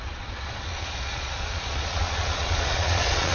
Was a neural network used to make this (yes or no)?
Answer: yes